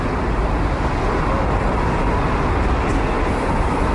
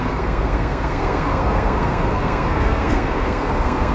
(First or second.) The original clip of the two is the first